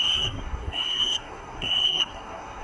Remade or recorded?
remade